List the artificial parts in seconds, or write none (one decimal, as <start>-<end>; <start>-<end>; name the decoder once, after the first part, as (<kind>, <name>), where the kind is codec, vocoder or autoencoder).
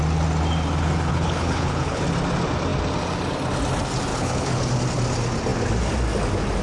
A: 1.1-2.0 (codec, HILCodec); 4.1-4.7